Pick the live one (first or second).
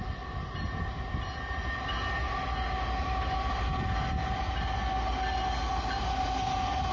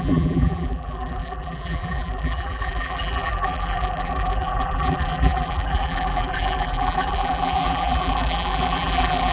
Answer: first